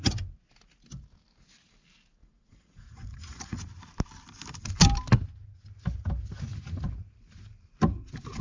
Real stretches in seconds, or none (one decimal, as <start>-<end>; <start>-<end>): 0.0-2.2; 3.6-8.4